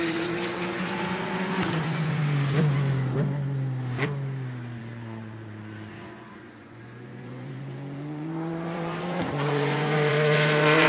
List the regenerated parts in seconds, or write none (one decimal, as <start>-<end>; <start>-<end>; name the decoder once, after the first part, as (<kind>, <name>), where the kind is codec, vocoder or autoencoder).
0.0-2.2 (vocoder, Vocos); 4.8-10.9

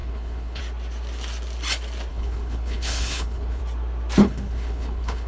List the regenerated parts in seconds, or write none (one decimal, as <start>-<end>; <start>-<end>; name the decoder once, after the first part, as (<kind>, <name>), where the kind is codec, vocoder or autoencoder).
0.0-0.6 (codec, HILCodec); 2.1-3.6; 4.2-5.3